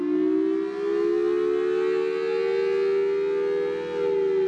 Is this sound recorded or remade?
recorded